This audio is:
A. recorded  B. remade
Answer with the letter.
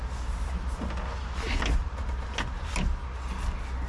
A